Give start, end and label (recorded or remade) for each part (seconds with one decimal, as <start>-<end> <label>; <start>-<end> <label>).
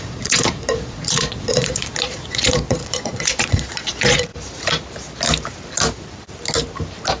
0.0-4.3 remade; 4.3-7.2 recorded